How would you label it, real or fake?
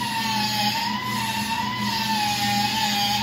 real